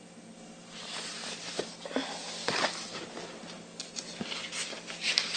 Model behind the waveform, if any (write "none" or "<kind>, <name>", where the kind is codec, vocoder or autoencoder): none